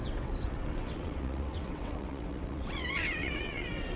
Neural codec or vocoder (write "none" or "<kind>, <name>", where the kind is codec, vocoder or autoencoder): vocoder, WaveNeXt